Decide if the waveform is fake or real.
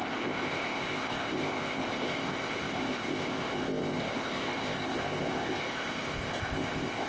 fake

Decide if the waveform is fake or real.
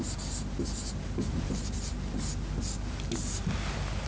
real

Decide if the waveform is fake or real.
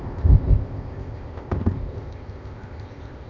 fake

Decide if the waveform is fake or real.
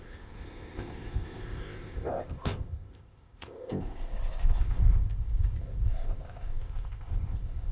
fake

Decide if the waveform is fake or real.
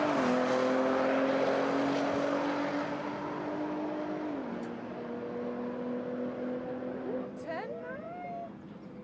real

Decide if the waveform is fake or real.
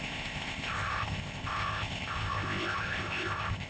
fake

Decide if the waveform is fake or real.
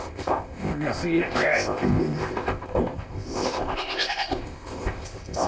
fake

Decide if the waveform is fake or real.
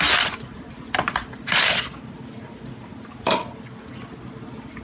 real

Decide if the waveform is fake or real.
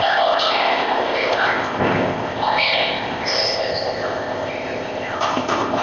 fake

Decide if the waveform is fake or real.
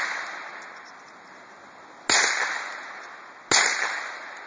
real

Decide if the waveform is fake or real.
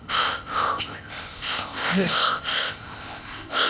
fake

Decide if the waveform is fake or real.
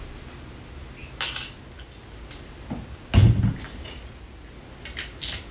real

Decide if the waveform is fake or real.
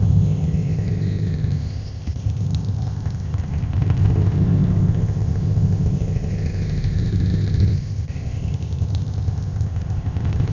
fake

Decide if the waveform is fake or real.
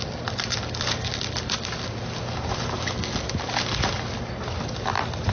real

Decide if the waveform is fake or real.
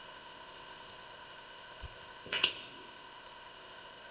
fake